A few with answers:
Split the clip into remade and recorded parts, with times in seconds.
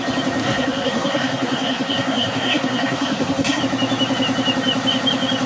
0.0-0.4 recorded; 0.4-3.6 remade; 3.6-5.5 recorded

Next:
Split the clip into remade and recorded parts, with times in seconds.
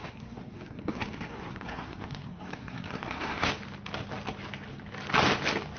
0.0-3.5 remade; 3.5-5.8 recorded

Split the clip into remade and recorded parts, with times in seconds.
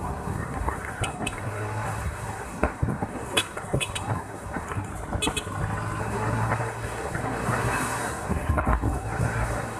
0.0-4.9 remade; 4.9-6.0 recorded; 6.0-9.8 remade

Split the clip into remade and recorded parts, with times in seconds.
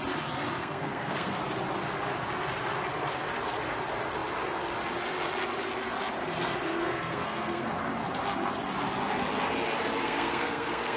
0.0-0.6 recorded; 0.6-1.4 remade; 1.4-6.8 recorded; 6.8-7.7 remade; 7.7-10.0 recorded; 10.0-11.0 remade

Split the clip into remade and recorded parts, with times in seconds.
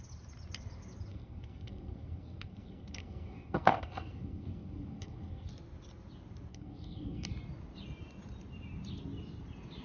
0.0-1.1 recorded; 1.1-5.5 remade; 5.5-6.5 recorded; 6.5-7.3 remade; 7.3-9.8 recorded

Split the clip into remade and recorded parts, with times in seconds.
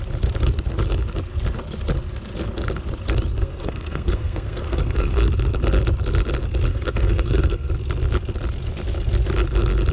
0.0-3.4 recorded; 3.4-5.2 remade; 5.2-6.7 recorded; 6.7-7.7 remade; 7.7-9.9 recorded